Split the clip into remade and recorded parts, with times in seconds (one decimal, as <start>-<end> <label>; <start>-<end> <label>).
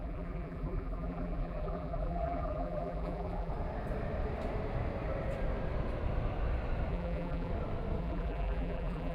0.0-3.5 remade; 3.5-6.9 recorded; 6.9-7.5 remade; 7.5-8.0 recorded; 8.0-9.1 remade